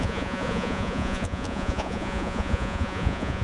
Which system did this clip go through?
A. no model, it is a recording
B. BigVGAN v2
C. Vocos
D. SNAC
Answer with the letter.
C